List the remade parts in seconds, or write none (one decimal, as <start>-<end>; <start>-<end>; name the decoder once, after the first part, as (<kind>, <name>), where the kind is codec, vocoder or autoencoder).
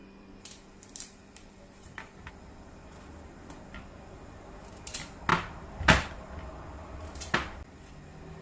0.0-2.3 (vocoder, BigVGAN v2); 5.3-6.1